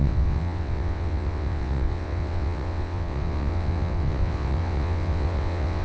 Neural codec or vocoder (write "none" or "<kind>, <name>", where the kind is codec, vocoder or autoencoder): vocoder, WaveNeXt